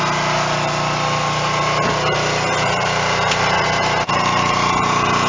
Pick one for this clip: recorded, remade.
recorded